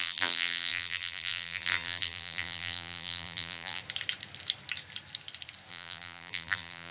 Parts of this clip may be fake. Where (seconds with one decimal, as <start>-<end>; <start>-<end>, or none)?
0.0-3.8; 5.7-6.9